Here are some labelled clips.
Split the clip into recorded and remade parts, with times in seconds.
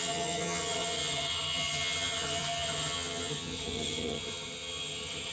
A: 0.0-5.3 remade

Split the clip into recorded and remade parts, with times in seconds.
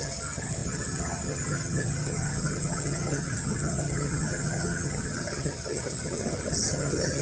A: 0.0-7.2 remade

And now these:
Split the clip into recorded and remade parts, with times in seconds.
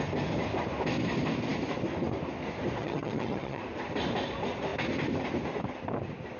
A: 0.0-2.8 recorded; 2.8-3.6 remade; 3.6-6.4 recorded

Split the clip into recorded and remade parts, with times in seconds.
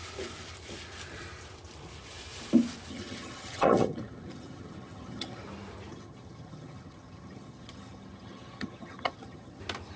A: 0.0-2.9 recorded; 2.9-5.4 remade; 5.4-5.9 recorded; 5.9-9.6 remade; 9.6-10.0 recorded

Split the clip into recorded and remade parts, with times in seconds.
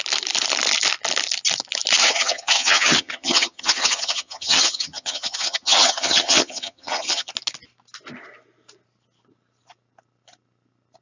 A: 0.0-2.0 recorded; 2.0-7.3 remade; 7.3-11.0 recorded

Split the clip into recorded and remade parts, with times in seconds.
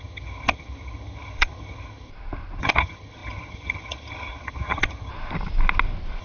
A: 0.0-2.1 remade; 2.1-2.6 recorded; 2.6-5.1 remade; 5.1-6.2 recorded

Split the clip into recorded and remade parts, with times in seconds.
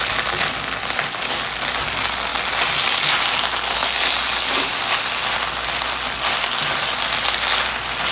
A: 0.0-8.1 recorded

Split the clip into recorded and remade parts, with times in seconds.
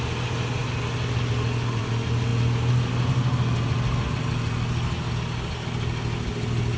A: 0.0-6.8 recorded